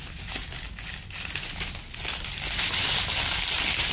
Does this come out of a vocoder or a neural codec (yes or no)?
no